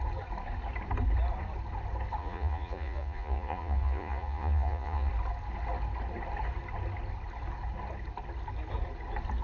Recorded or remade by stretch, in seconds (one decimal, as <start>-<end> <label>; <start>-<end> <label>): 0.0-2.2 recorded; 2.2-5.1 remade; 5.1-9.4 recorded